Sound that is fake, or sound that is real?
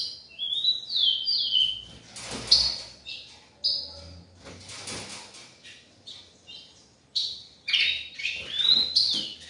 real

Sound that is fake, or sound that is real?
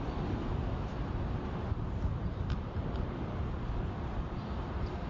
fake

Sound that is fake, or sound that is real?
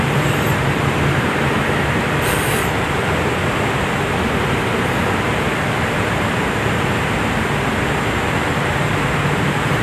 fake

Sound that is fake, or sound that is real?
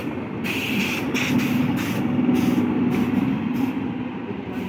real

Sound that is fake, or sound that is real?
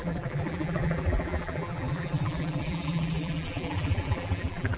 fake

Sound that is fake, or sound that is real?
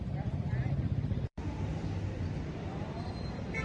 fake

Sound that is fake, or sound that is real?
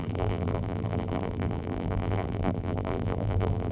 fake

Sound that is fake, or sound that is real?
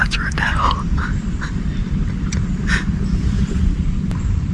fake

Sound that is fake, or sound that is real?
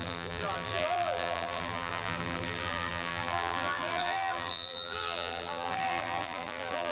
fake